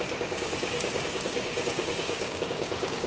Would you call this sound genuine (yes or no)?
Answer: no